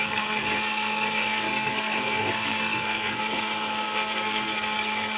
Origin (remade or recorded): remade